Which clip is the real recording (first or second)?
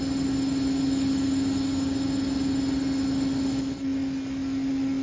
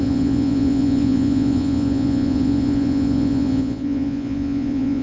first